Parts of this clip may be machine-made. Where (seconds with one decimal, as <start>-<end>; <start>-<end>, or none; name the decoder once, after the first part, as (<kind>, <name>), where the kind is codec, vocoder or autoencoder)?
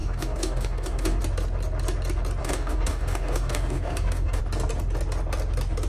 0.0-1.2 (codec, DAC); 2.4-4.4